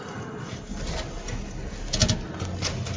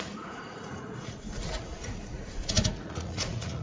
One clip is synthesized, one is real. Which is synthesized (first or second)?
second